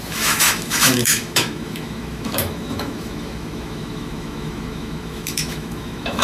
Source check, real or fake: fake